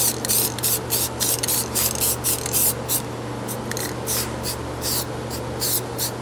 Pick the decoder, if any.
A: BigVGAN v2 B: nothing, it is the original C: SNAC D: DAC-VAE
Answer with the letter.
B